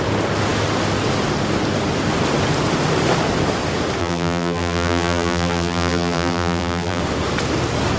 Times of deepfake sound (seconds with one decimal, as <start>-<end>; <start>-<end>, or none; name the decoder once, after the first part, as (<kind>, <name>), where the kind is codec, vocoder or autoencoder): 4.0-7.0 (vocoder, BigVGAN v2)